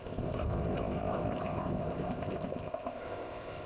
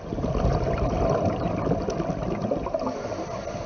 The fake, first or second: first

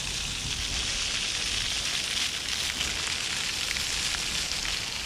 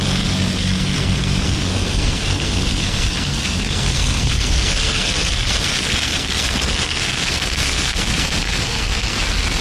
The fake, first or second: second